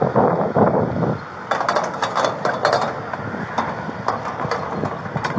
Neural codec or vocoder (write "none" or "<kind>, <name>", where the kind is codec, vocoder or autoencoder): none